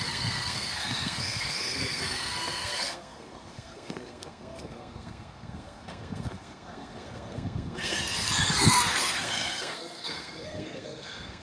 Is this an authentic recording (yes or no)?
no